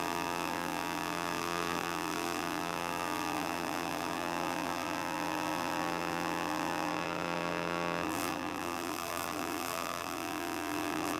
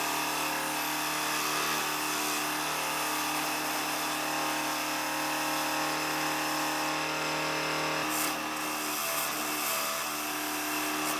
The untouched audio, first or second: second